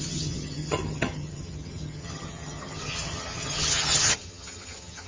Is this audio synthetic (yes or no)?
yes